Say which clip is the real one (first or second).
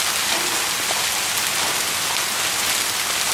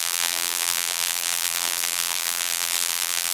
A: first